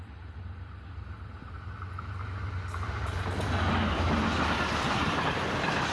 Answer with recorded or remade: recorded